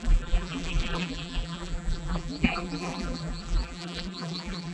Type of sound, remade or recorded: remade